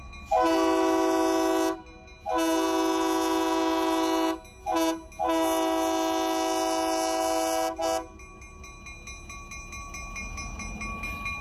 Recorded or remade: recorded